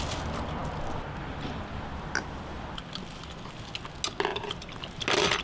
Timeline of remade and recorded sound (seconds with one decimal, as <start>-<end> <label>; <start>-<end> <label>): 0.0-5.4 recorded